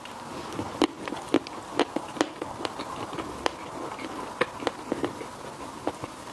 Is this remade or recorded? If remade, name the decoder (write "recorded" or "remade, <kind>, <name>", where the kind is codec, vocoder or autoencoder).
recorded